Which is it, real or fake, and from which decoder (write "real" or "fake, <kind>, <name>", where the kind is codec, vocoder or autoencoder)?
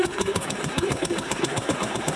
fake, codec, SNAC